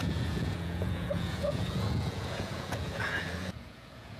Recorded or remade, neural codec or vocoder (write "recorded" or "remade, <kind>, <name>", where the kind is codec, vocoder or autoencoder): remade, vocoder, Vocos